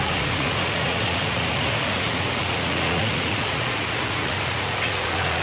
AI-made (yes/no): yes